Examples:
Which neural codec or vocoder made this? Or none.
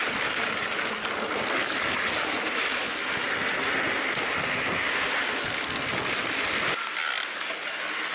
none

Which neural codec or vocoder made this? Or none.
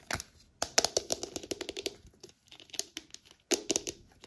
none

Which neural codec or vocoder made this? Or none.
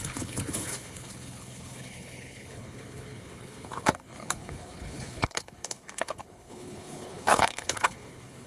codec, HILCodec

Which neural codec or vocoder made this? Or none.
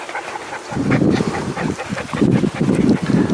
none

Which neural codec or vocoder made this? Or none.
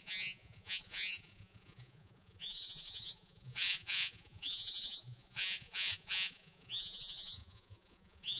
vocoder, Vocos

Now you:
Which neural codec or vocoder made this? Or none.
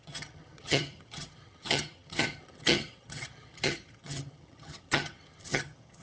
vocoder, HiFi-GAN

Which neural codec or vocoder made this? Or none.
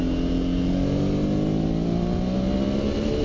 none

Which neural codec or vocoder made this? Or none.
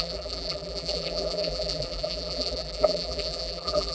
vocoder, BigVGAN v2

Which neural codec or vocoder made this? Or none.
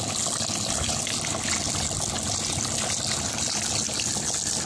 none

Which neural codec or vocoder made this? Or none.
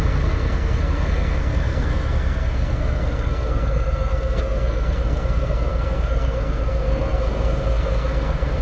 codec, SNAC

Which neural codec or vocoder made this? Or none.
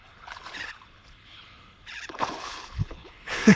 codec, HILCodec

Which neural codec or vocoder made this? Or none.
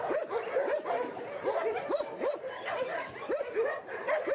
none